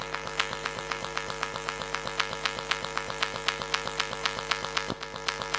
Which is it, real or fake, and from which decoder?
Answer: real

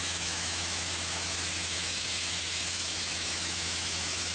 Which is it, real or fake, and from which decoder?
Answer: fake, autoencoder, DAC-VAE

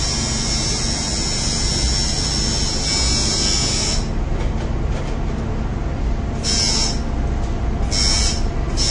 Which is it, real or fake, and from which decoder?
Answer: real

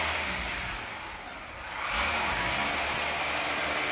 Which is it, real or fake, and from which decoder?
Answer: real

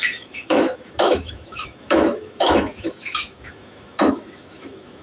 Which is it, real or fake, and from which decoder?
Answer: fake, autoencoder, DAC-VAE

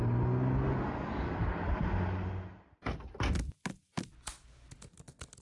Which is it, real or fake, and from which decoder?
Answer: real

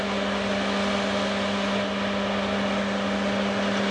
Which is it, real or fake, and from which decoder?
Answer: real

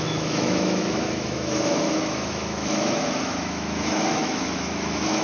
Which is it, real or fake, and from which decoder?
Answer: fake, autoencoder, DAC-VAE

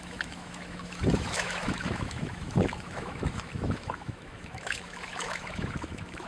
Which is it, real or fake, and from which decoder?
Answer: fake, autoencoder, DAC-VAE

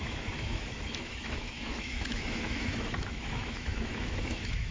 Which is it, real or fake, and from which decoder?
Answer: fake, autoencoder, DAC-VAE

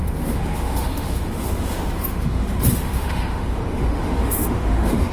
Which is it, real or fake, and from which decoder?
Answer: fake, autoencoder, DAC-VAE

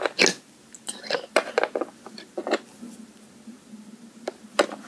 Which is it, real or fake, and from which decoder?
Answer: real